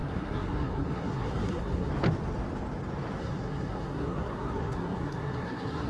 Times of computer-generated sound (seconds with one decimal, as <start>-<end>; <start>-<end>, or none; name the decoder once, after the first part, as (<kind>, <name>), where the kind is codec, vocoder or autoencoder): 0.0-1.9 (codec, SNAC); 3.2-5.9